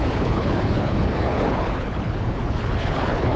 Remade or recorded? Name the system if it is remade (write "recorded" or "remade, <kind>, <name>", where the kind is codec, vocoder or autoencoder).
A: remade, codec, HILCodec